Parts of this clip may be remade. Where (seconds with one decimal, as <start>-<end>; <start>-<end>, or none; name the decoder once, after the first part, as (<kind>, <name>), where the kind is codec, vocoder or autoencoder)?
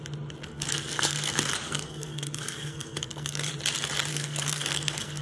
0.4-3.5 (codec, SNAC); 4.1-5.2